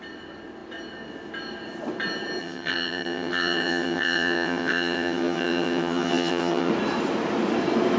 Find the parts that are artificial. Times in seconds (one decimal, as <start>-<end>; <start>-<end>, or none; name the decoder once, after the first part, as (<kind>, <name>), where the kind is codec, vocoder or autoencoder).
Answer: 2.4-6.7 (vocoder, HiFi-GAN)